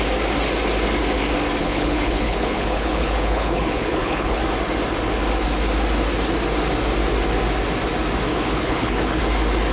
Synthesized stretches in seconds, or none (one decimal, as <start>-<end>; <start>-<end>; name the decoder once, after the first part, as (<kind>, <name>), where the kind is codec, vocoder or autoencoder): 1.6-4.4 (codec, HILCodec); 8.3-9.2